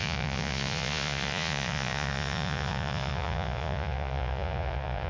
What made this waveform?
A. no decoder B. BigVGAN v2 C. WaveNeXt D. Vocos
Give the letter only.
D